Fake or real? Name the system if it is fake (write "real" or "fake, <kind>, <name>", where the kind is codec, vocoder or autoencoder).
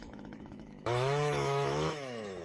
fake, autoencoder, DAC-VAE